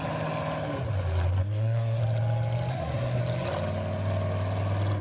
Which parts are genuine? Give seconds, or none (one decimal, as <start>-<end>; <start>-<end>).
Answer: 0.0-1.4; 2.0-2.7; 3.2-5.0